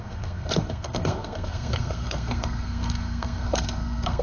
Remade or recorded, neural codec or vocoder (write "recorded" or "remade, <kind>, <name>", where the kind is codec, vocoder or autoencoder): remade, codec, SNAC